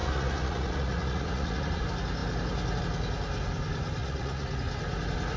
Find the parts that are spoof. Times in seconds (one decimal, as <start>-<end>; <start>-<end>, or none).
0.0-1.8; 4.0-4.6